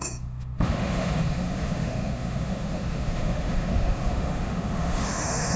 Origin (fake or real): fake